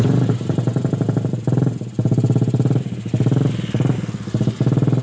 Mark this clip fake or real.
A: real